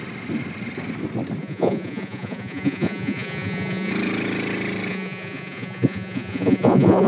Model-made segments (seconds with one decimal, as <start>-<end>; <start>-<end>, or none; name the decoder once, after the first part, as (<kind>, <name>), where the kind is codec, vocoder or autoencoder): 1.4-3.9 (vocoder, Vocos); 4.9-7.1